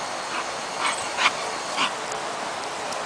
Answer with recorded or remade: recorded